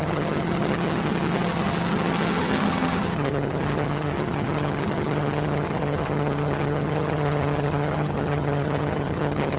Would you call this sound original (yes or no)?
no